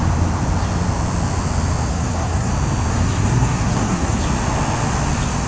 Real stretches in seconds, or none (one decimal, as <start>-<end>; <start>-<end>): 0.0-1.9; 2.5-2.9; 4.2-5.5